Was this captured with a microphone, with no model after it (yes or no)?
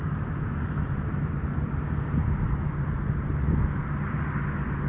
yes